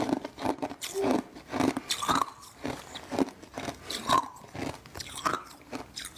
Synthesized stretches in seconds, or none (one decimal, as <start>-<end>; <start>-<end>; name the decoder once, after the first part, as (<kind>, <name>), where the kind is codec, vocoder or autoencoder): none